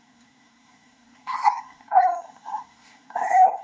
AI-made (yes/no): yes